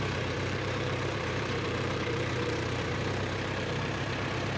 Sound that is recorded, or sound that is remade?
remade